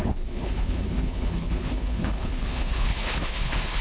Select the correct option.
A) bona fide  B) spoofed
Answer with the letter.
B